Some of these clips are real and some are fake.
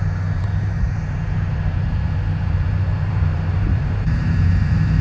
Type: fake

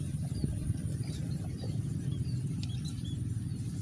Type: fake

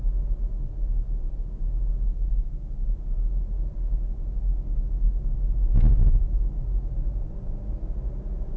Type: real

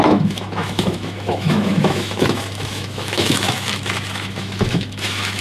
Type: fake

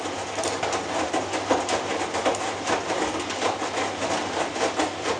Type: real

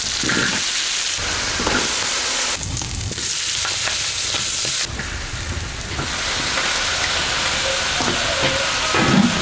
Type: real